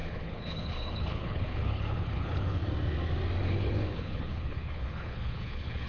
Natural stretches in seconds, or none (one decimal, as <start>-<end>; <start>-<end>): 2.6-3.4